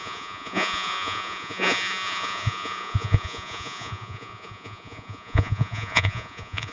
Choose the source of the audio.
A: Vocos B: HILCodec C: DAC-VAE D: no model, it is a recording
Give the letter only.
A